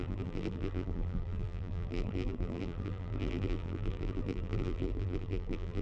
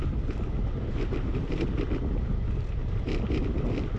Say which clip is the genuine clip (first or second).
second